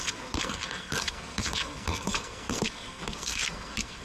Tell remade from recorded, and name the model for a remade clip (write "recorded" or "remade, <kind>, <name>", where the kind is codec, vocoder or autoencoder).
remade, codec, SNAC